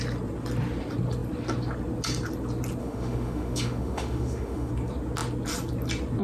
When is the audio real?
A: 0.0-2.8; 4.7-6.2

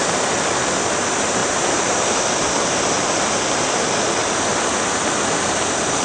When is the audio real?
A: 0.0-6.0

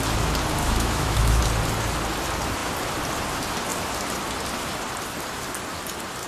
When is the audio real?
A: 0.0-0.6; 1.4-6.3

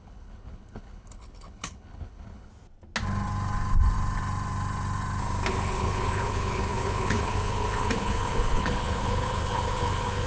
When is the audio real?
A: 2.5-5.5

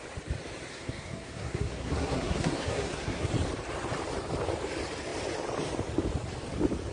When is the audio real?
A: 0.0-0.7; 3.3-6.9